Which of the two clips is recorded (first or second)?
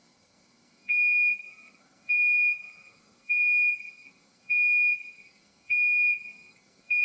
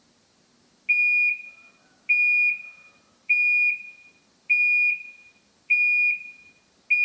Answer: second